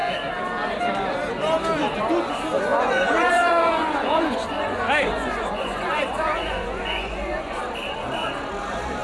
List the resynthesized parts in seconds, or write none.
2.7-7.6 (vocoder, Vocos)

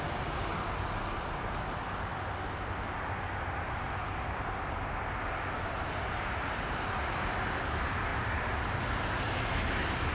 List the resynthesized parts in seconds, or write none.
none

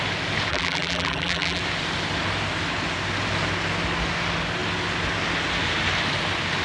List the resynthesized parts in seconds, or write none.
0.5-1.6 (vocoder, BigVGAN v2)